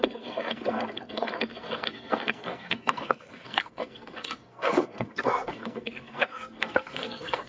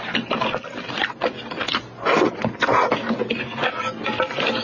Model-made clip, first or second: first